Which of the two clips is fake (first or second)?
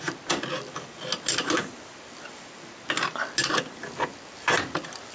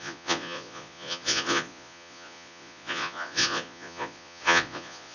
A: second